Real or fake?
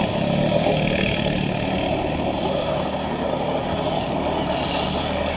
real